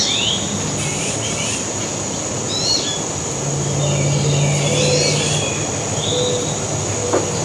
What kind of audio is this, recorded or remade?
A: recorded